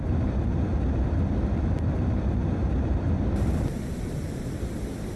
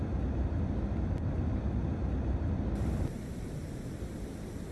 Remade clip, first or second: first